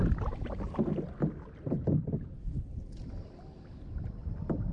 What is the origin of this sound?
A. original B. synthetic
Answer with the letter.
A